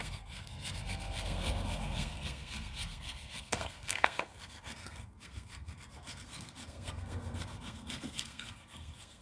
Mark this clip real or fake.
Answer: fake